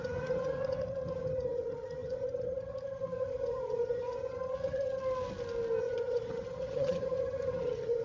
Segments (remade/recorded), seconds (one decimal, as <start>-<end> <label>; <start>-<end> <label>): 0.0-5.0 remade; 5.0-5.8 recorded; 5.8-8.0 remade

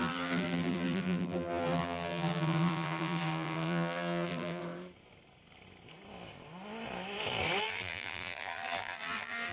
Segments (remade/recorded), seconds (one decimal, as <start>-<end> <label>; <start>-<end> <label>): 0.0-4.6 remade; 4.6-7.6 recorded; 7.6-9.5 remade